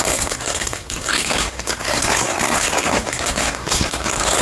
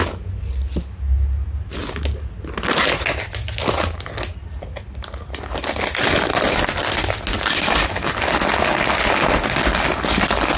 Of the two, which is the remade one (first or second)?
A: first